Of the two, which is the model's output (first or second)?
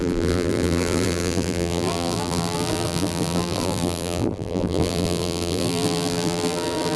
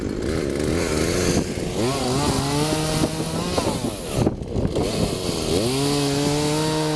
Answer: first